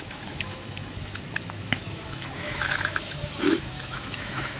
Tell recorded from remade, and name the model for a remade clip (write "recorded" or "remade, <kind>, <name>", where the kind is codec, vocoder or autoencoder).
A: remade, autoencoder, DAC-VAE